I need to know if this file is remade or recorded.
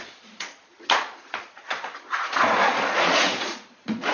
remade